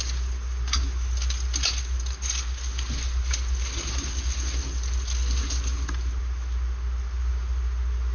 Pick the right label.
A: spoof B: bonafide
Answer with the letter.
B